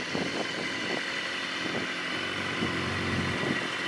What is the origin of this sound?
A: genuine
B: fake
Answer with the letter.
A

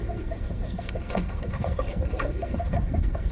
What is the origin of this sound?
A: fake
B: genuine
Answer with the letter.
A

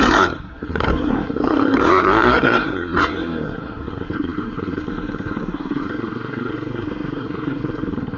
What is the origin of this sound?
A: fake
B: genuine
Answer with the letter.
A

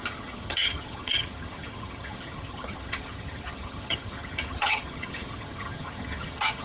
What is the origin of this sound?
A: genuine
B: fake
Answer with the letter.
B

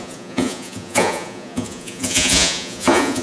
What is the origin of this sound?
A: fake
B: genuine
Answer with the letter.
A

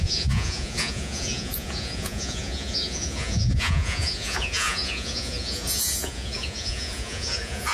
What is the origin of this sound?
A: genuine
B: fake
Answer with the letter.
B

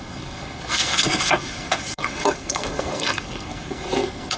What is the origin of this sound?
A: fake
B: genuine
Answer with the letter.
A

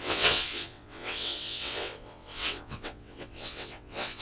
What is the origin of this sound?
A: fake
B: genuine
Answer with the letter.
A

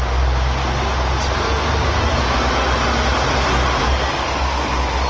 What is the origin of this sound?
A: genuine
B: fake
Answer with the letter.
A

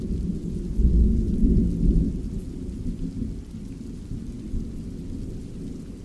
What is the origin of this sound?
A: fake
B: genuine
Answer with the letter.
B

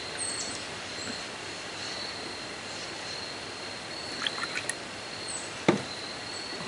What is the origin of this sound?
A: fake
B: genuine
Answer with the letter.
B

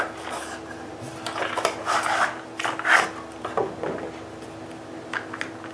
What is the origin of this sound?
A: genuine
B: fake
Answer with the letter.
A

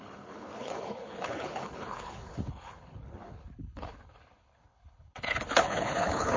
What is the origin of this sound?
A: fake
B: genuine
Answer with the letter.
A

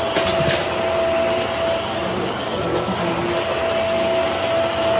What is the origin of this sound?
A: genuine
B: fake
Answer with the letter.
A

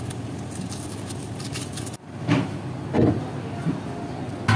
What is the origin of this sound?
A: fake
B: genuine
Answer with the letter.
B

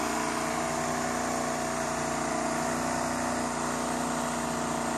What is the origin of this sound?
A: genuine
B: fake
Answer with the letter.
A